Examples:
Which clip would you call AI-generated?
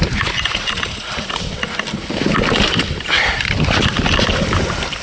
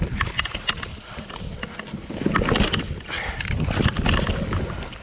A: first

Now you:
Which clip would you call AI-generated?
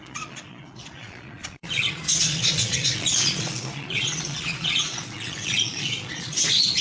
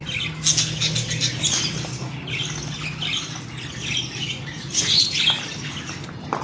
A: first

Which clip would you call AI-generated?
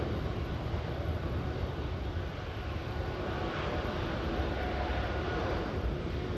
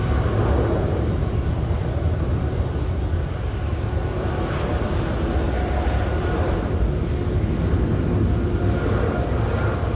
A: first